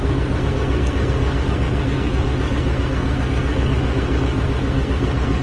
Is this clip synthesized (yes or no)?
yes